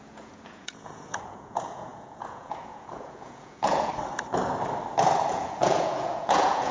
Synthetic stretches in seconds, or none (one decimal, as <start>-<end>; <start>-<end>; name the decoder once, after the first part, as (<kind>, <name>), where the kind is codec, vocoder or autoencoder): 0.0-3.9 (vocoder, Vocos); 5.3-6.7